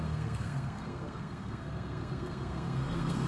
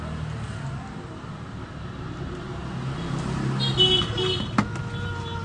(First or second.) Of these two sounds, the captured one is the second